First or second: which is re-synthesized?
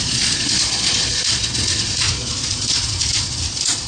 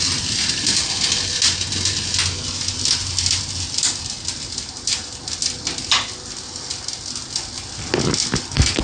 first